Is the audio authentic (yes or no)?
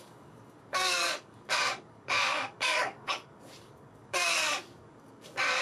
no